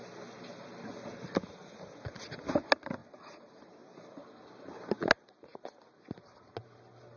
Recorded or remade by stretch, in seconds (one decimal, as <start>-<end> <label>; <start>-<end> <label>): 0.0-7.2 recorded